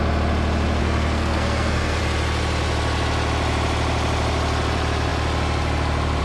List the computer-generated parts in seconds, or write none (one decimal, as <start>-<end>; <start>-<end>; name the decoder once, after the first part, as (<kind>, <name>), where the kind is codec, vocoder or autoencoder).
0.8-2.0 (codec, SNAC)